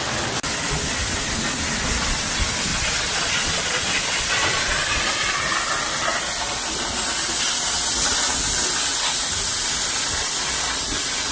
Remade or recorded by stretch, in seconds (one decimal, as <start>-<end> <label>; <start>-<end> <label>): 0.0-2.7 recorded; 2.7-5.4 remade; 5.4-11.3 recorded